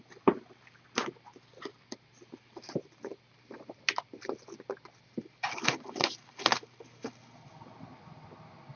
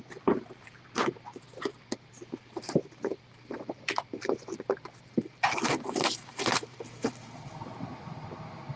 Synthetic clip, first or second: second